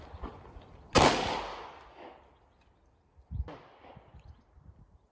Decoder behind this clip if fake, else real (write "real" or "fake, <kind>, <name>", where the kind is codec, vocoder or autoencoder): real